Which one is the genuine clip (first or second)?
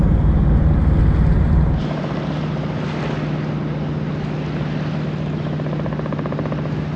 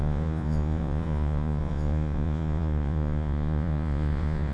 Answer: first